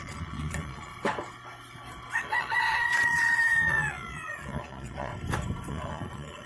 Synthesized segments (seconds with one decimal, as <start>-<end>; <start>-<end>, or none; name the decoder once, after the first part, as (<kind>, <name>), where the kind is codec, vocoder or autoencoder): 0.0-0.9 (vocoder, Vocos); 2.2-5.1; 5.7-6.5